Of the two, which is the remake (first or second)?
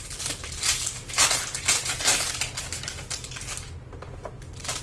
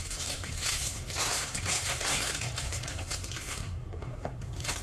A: second